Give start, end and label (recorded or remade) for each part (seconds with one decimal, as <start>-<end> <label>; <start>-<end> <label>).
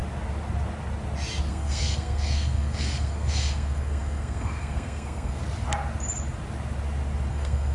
0.0-1.5 recorded; 1.5-5.4 remade; 5.4-7.3 recorded; 7.3-7.7 remade